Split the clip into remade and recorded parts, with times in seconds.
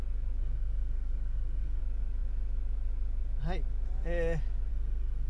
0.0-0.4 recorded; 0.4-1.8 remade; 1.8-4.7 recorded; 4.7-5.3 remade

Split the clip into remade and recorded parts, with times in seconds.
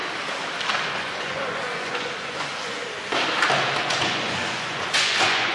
0.0-0.9 recorded; 0.9-2.8 remade; 2.8-3.8 recorded; 3.8-5.5 remade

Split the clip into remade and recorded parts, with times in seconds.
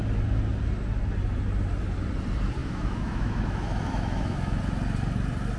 0.0-2.6 recorded; 2.6-4.6 remade; 4.6-5.6 recorded